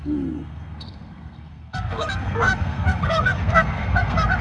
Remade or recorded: remade